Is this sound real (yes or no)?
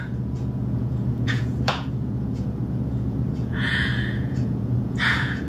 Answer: no